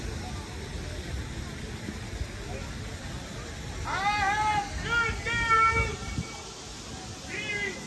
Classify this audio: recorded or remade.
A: recorded